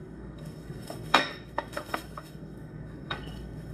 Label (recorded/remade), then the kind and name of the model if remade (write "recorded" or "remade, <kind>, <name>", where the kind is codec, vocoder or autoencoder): remade, codec, SNAC